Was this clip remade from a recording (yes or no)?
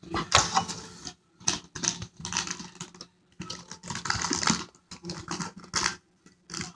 no